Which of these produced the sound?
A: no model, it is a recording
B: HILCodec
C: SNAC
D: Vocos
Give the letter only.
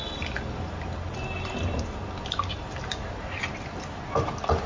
A